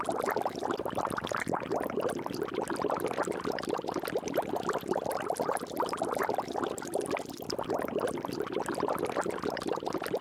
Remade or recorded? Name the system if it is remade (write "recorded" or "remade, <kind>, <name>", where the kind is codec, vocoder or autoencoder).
recorded